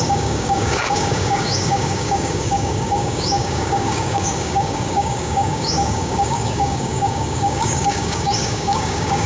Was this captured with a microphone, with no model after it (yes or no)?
no